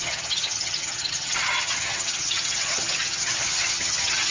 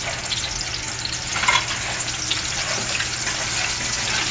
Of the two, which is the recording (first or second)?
second